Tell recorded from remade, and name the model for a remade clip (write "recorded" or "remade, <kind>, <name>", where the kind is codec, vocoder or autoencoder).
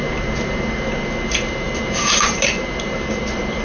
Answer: remade, vocoder, BigVGAN v2